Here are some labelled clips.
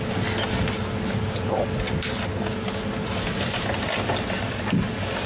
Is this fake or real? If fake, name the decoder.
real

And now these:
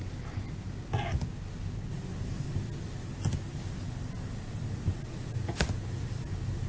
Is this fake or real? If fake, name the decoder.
real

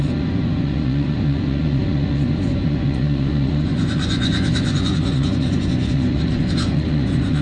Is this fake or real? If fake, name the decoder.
fake, vocoder, Vocos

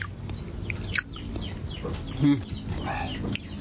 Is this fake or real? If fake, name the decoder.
real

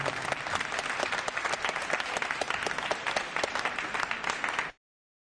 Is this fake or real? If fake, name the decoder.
real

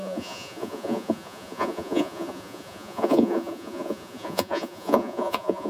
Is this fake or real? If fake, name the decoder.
fake, vocoder, Vocos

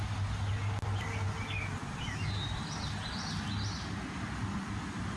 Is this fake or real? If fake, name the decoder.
real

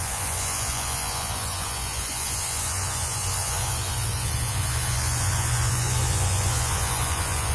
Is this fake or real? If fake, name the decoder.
fake, vocoder, Vocos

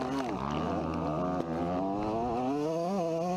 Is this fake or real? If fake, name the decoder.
real